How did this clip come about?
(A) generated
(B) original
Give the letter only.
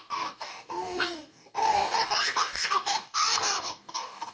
A